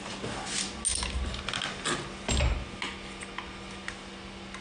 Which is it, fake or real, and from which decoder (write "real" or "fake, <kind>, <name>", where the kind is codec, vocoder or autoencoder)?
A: real